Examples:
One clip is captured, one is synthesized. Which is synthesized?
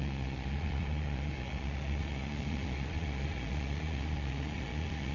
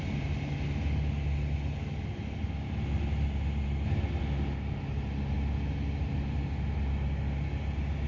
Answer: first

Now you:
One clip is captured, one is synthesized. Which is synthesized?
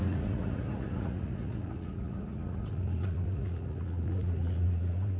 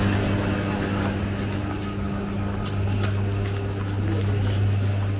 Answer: first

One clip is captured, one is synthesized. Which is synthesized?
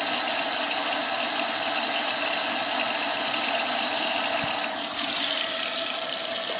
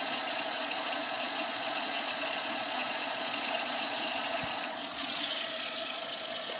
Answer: second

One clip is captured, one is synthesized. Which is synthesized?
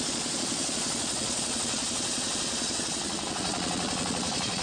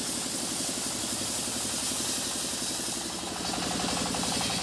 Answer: first